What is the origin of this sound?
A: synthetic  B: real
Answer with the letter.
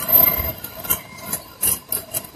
B